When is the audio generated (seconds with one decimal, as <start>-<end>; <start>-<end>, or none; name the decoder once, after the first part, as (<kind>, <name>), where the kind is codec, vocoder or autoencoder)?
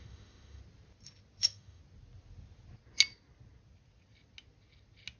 0.0-0.6 (autoencoder, DAC-VAE); 1.4-1.8